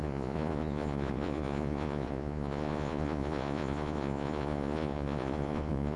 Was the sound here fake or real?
fake